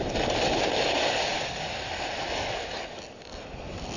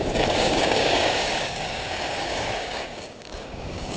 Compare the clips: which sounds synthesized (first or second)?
second